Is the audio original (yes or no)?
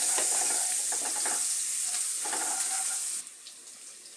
yes